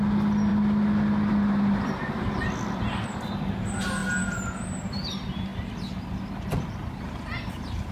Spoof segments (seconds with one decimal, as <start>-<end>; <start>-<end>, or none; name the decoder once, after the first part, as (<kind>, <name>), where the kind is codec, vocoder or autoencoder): none